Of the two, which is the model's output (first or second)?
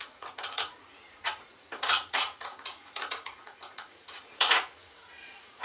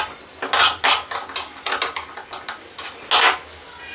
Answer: first